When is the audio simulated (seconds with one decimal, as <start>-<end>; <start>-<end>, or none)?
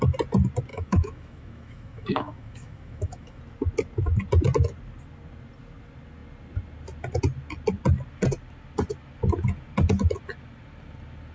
0.7-3.4